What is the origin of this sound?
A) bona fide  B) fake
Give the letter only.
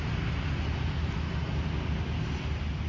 A